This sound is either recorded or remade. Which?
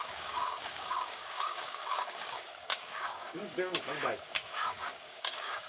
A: remade